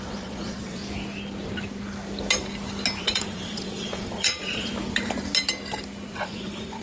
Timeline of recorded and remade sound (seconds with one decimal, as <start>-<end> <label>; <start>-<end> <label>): 0.0-0.8 remade; 0.8-3.0 recorded; 3.0-4.7 remade; 4.7-6.1 recorded; 6.1-6.8 remade